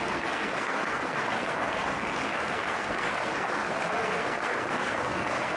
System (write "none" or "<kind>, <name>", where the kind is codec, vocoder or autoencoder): codec, SNAC